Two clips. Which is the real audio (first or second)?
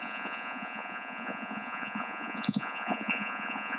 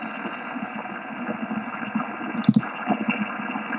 second